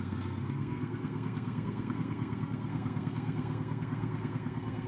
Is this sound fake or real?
fake